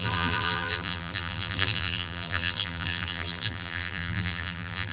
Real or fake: fake